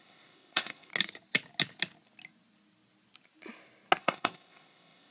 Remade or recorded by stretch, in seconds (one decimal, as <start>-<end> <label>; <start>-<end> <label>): 0.0-0.9 remade; 0.9-4.0 recorded; 4.0-5.1 remade